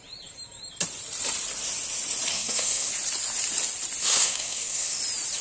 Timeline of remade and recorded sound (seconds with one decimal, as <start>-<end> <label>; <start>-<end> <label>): 0.0-2.3 recorded; 2.3-2.9 remade; 2.9-4.0 recorded; 4.0-5.0 remade; 5.0-5.4 recorded